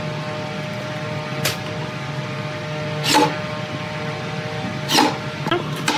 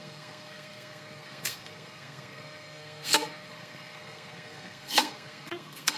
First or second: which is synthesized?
second